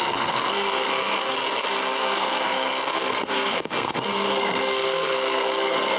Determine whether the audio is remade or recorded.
remade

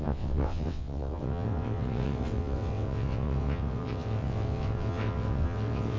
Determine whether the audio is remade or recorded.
remade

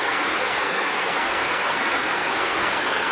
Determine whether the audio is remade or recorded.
remade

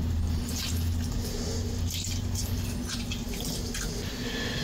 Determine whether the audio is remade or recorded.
recorded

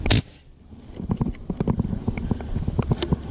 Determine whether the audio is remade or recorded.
recorded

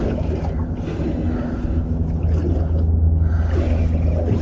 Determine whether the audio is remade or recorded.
recorded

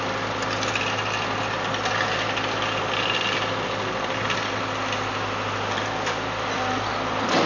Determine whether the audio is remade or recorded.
recorded